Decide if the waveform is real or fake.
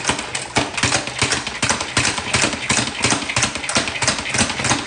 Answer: real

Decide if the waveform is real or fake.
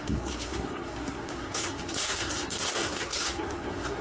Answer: fake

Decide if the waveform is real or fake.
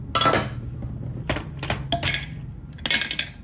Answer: real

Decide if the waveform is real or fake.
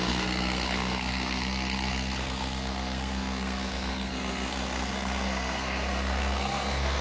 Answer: fake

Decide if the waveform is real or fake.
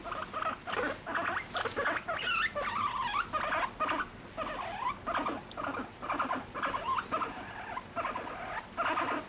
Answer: real